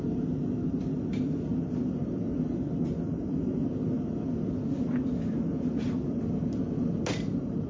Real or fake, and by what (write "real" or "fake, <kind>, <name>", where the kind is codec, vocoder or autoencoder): real